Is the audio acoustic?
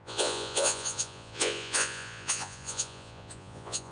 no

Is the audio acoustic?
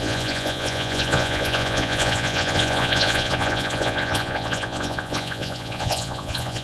no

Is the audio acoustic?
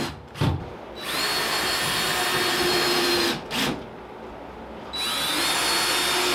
yes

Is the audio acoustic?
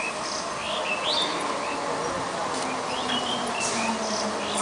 yes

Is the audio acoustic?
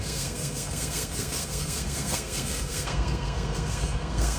no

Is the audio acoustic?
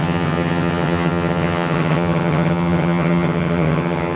no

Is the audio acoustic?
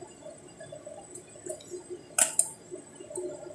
yes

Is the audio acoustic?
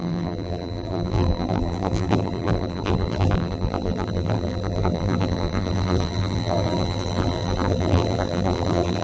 no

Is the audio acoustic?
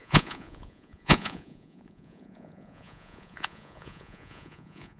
no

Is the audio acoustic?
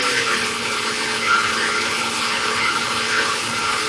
no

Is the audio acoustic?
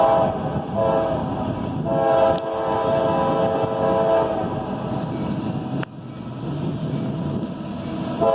yes